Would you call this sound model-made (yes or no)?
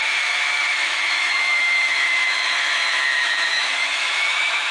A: yes